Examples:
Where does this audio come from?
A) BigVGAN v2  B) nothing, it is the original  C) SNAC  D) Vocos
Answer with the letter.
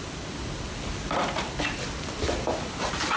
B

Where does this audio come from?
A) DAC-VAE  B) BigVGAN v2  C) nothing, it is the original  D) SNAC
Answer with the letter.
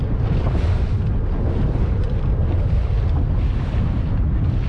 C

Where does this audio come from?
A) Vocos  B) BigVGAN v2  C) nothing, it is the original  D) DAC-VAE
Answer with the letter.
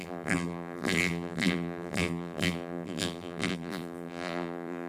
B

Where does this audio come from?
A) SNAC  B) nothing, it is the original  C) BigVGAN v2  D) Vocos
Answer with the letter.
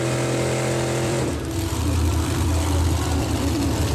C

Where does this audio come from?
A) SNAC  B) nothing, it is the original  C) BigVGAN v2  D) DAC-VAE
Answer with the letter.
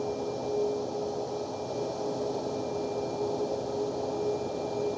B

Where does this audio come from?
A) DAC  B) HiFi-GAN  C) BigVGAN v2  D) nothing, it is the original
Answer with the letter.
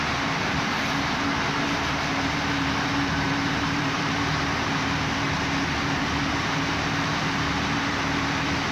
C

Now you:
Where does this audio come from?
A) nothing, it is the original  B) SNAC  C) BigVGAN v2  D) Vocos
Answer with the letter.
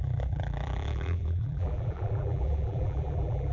C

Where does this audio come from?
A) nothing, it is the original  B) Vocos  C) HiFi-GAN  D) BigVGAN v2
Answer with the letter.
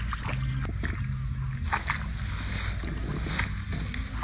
A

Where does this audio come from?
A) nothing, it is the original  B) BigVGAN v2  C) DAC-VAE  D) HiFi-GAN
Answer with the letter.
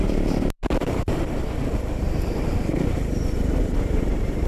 B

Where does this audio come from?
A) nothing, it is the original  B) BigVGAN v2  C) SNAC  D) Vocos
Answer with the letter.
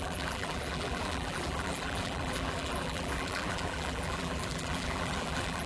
B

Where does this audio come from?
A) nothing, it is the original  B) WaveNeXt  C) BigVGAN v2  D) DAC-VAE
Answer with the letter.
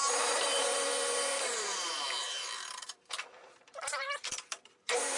C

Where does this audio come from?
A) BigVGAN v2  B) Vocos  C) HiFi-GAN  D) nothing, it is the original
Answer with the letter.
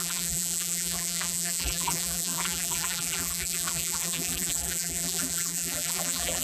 A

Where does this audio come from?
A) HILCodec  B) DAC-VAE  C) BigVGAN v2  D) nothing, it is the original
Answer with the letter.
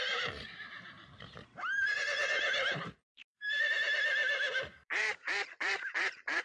C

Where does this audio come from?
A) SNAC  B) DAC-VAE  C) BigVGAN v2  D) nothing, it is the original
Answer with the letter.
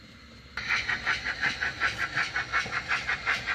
D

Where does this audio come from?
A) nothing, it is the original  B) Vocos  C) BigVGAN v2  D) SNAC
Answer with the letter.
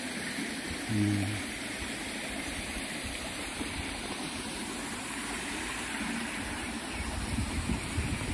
C